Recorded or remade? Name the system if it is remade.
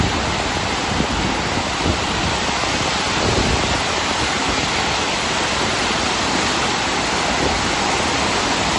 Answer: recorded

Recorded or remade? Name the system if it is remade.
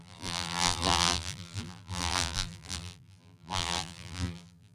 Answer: remade, vocoder, BigVGAN v2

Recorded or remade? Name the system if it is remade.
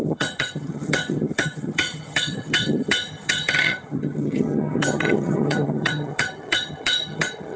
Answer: remade, vocoder, HiFi-GAN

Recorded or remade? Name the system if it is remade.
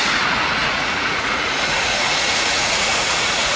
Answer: remade, vocoder, Vocos